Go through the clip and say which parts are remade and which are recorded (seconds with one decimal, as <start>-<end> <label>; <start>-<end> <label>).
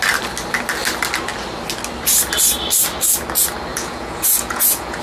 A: 0.0-3.7 recorded; 3.7-5.0 remade